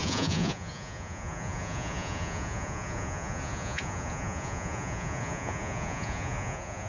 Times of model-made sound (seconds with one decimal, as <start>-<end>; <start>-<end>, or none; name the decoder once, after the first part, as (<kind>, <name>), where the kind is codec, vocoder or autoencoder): 0.0-6.9 (vocoder, Vocos)